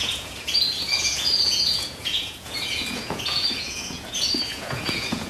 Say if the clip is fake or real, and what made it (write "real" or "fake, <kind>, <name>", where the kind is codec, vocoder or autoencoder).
fake, vocoder, Vocos